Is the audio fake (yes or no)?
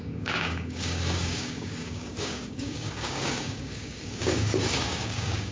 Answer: yes